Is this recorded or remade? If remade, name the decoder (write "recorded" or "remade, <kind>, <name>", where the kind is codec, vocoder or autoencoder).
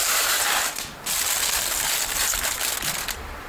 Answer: recorded